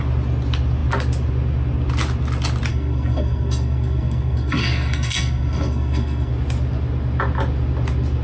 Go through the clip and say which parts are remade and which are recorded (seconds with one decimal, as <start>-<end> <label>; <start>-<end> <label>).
0.0-2.7 recorded; 2.7-6.3 remade; 6.3-8.2 recorded